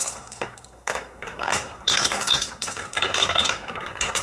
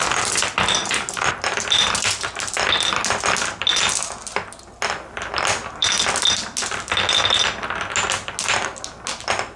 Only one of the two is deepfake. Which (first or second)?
first